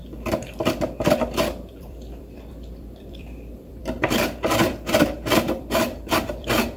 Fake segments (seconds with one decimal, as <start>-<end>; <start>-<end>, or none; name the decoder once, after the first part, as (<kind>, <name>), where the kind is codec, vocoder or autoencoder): 1.7-6.8 (vocoder, BigVGAN v2)